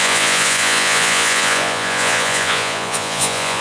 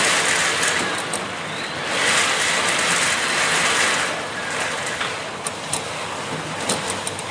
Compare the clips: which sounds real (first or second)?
second